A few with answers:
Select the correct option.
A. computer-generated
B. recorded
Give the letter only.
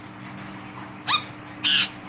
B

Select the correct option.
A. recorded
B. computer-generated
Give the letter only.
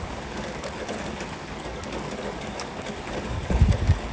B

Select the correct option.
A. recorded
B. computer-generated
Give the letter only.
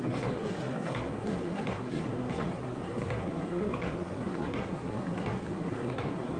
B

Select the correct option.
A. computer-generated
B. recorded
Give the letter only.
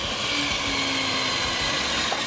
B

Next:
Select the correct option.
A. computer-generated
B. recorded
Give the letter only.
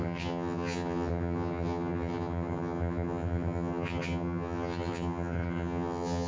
A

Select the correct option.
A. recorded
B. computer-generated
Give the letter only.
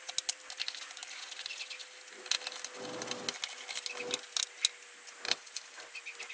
A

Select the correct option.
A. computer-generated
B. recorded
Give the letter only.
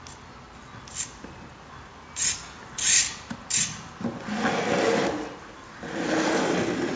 B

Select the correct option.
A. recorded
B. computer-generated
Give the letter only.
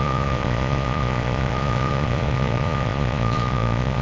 B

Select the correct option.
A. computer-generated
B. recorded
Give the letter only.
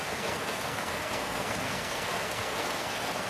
A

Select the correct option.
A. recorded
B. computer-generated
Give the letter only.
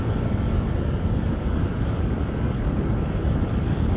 B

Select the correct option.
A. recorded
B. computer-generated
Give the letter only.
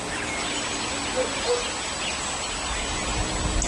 A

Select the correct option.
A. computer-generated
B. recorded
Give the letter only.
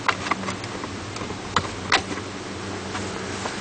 B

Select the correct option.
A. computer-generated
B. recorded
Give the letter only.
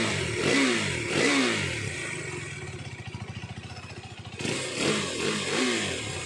B